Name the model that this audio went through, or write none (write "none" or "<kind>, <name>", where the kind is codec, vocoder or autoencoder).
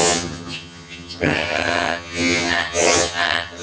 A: vocoder, HiFi-GAN